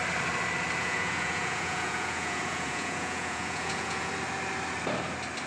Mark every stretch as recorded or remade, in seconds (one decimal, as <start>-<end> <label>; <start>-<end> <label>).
0.0-0.8 recorded; 0.8-4.1 remade; 4.1-5.5 recorded